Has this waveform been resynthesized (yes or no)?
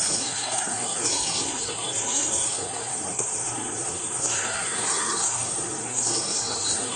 yes